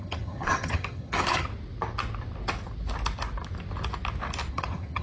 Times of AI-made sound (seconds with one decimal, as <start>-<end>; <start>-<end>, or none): 0.0-1.5; 4.5-5.0